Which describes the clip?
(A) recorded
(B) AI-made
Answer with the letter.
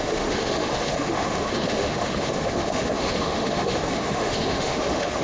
B